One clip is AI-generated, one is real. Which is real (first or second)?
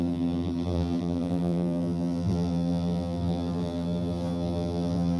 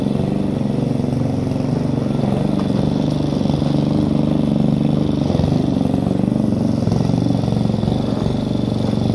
second